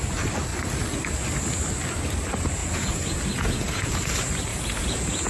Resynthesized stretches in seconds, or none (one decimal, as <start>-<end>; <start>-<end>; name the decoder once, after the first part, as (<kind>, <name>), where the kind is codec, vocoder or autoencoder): 2.6-4.0 (vocoder, Vocos); 4.5-5.3